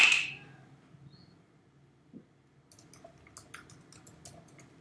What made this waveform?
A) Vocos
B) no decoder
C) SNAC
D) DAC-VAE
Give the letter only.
B